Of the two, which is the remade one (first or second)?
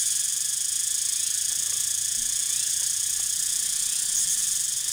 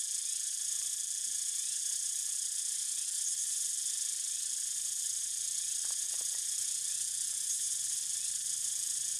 second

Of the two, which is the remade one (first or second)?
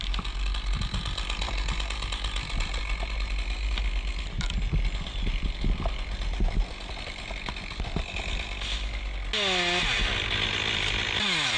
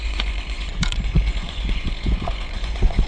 second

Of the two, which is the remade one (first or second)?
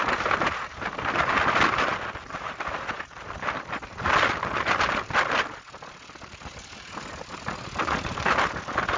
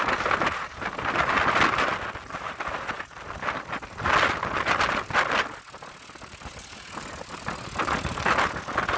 first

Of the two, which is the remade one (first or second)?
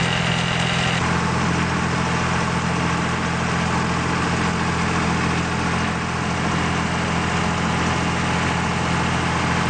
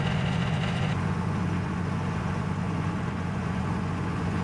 second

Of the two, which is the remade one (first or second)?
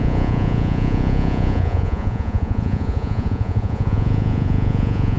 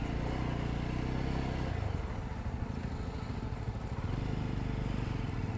first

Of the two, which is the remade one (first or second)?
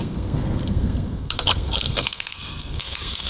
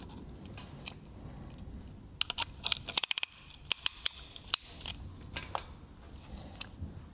first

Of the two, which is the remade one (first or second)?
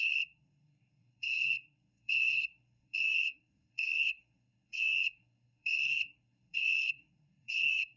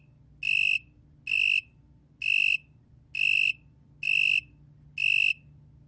first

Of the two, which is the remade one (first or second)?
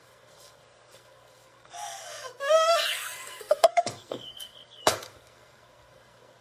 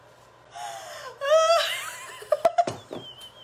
first